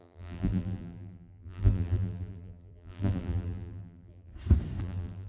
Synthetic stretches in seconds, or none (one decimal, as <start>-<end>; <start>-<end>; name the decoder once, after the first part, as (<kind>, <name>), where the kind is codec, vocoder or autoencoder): 0.0-4.3 (vocoder, BigVGAN v2); 4.8-5.3